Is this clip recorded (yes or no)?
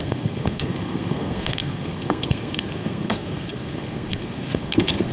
no